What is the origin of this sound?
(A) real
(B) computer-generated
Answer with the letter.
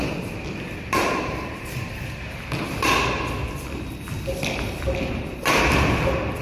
A